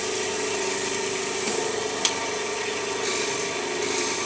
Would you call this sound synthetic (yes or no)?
no